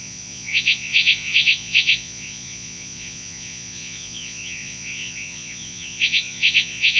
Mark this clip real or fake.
fake